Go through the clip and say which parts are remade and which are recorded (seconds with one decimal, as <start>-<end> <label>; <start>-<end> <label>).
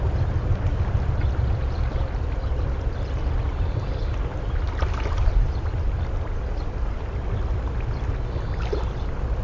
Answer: 0.0-9.4 recorded